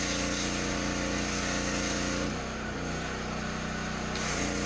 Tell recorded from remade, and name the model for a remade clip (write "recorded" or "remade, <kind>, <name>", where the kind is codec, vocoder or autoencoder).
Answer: recorded